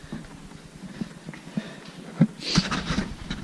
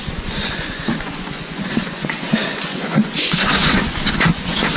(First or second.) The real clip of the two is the first